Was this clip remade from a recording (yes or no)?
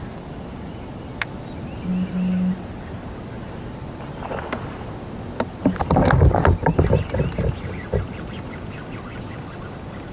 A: no